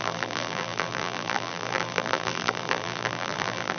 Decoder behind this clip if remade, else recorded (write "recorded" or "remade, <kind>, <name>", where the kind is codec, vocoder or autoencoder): remade, vocoder, BigVGAN v2